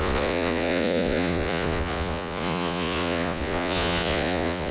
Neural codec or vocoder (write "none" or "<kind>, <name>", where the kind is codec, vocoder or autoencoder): vocoder, Vocos